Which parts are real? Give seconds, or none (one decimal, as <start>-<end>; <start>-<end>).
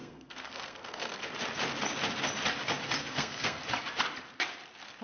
1.2-3.0; 3.6-5.0